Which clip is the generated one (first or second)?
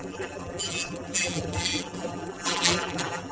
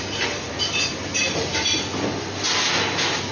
first